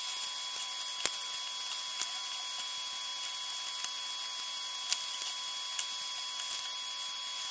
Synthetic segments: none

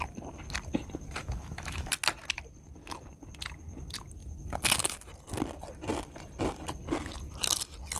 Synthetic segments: 1.2-1.9 (autoencoder, DAC-VAE)

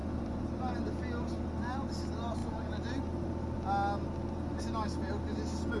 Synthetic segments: 0.0-0.6 (vocoder, BigVGAN v2)

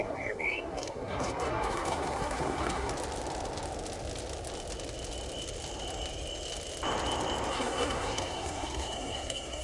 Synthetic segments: 0.0-2.9 (codec, SNAC); 7.5-9.6

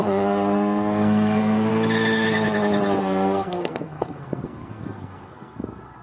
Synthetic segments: 0.0-1.7 (codec, SNAC); 3.0-6.0

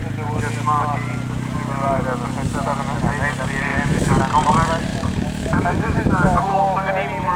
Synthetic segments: 3.7-4.2 (autoencoder, DAC-VAE); 4.9-6.9

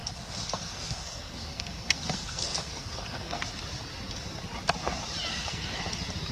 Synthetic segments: 0.0-3.4 (codec, SNAC); 5.3-5.8